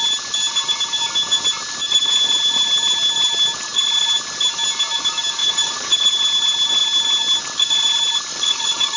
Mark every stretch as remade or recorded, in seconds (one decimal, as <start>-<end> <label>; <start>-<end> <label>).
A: 0.0-5.4 recorded; 5.4-5.9 remade; 5.9-8.3 recorded; 8.3-9.0 remade